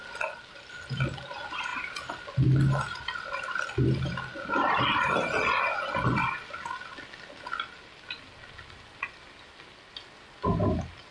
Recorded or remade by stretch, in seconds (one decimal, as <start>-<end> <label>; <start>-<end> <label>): 0.0-11.1 recorded